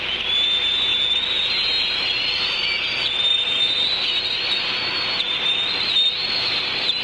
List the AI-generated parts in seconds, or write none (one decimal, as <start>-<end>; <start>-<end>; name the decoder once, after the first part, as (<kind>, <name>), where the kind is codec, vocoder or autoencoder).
none

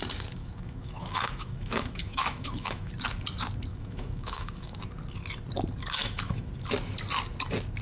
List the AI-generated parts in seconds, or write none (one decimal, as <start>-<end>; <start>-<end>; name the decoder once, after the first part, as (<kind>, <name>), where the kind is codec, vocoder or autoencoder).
0.4-2.9 (autoencoder, DAC-VAE); 3.7-4.8; 6.0-6.5

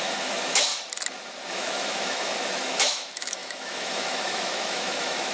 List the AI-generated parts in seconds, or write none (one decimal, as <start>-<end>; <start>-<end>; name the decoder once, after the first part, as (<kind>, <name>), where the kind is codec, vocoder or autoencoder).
0.0-0.7 (autoencoder, DAC-VAE); 1.5-5.3